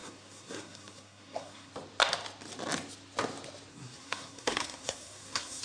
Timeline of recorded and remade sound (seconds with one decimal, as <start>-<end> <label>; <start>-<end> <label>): 0.0-1.7 remade; 1.7-3.7 recorded; 3.7-5.6 remade